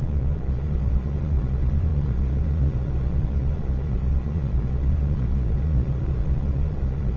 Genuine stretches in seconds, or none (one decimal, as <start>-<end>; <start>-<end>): none